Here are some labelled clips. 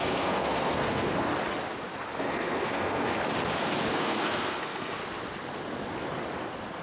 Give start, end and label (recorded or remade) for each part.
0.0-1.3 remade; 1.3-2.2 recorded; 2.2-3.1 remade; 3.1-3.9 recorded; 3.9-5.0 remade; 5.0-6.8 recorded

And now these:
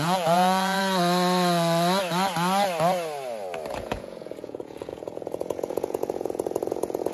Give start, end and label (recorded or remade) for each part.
0.0-0.8 remade; 0.8-3.7 recorded; 3.7-7.1 remade

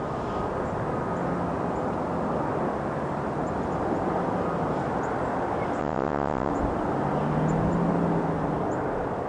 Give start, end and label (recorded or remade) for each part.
0.0-5.8 recorded; 5.8-6.5 remade; 6.5-9.3 recorded

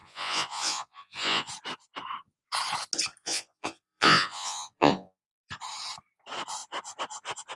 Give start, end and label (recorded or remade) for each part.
0.0-1.5 remade; 1.5-3.2 recorded; 3.2-5.3 remade; 5.3-7.6 recorded

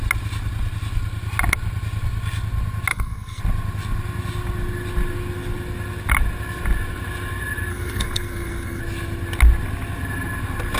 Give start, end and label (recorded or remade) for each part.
0.0-2.9 recorded; 2.9-3.4 remade; 3.4-7.7 recorded; 7.7-8.8 remade; 8.8-10.8 recorded

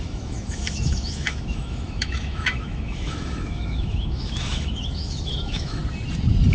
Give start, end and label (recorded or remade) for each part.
0.0-5.8 remade; 5.8-6.5 recorded

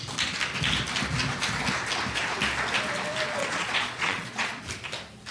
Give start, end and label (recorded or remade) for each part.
0.0-3.4 recorded; 3.4-4.6 remade; 4.6-5.3 recorded

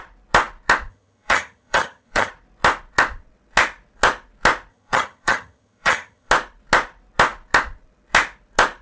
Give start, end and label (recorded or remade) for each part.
0.0-0.9 recorded; 0.9-2.3 remade; 2.3-4.7 recorded; 4.7-6.3 remade; 6.3-8.8 recorded